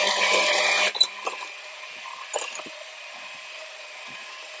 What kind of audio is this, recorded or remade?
remade